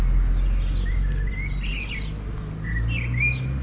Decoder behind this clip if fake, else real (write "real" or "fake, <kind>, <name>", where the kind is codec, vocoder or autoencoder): real